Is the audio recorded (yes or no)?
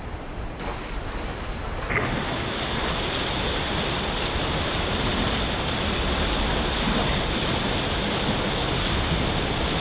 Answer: yes